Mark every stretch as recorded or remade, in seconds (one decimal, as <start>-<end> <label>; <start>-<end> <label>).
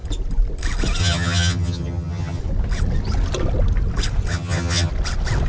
0.0-1.0 recorded; 1.0-2.4 remade; 2.4-4.3 recorded; 4.3-4.9 remade; 4.9-5.5 recorded